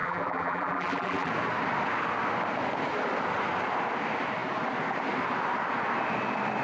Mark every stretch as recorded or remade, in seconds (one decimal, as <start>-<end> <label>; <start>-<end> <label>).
0.0-1.3 remade; 1.3-6.6 recorded